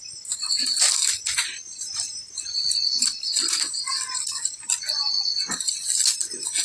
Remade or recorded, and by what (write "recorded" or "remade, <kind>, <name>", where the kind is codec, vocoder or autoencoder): recorded